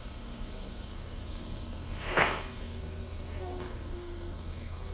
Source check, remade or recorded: remade